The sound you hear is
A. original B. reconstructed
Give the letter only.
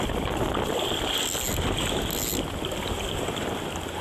A